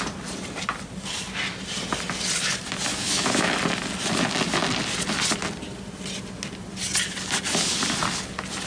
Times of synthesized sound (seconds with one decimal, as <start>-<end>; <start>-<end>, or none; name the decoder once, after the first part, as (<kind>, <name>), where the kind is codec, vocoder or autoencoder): 2.9-3.5 (autoencoder, DAC-VAE)